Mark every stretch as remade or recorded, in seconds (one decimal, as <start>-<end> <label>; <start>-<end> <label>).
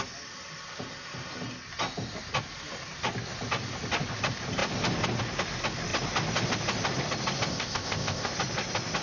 0.0-7.5 recorded; 7.5-8.3 remade; 8.3-9.0 recorded